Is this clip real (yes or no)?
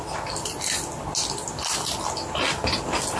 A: yes